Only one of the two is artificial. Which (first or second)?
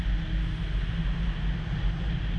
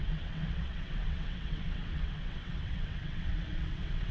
second